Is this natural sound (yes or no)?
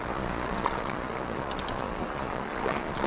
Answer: no